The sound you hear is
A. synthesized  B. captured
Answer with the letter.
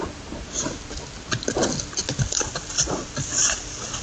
B